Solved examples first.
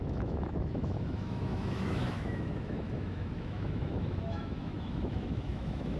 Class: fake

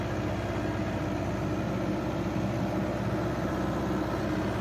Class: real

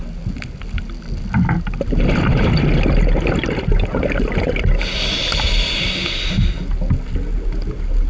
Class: real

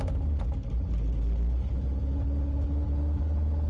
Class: real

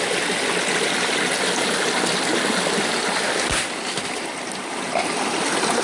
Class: real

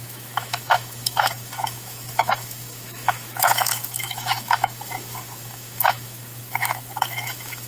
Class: fake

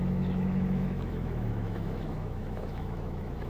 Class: fake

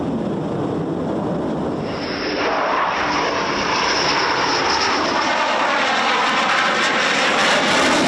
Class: real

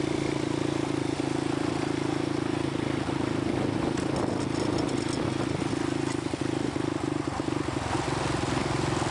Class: real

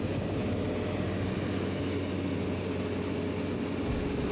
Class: real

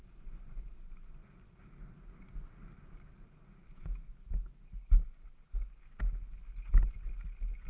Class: real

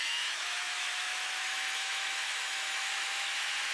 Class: fake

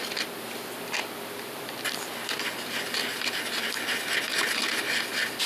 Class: real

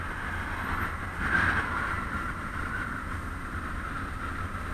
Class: real